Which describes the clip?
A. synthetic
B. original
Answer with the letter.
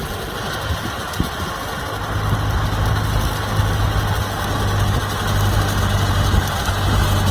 B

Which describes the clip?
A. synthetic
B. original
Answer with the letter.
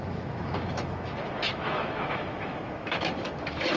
A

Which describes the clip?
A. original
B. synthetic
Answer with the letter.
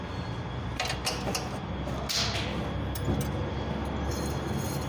A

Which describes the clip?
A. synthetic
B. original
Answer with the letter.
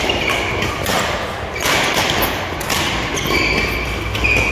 B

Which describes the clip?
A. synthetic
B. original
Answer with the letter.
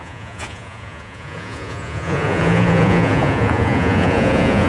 A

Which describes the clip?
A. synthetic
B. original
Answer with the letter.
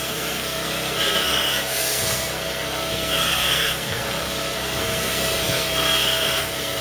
A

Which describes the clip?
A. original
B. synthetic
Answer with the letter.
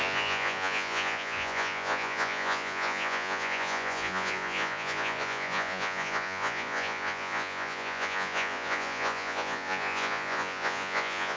B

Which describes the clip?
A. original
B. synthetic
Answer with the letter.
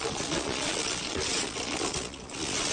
B